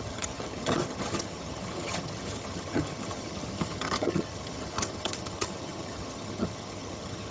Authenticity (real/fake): fake